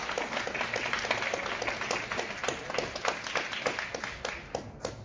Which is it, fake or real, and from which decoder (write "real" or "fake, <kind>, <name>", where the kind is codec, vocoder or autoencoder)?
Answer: real